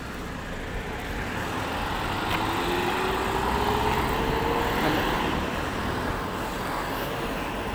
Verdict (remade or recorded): recorded